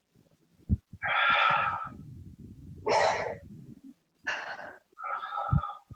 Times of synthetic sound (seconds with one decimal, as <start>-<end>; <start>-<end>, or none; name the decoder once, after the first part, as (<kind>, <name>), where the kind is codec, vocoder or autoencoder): none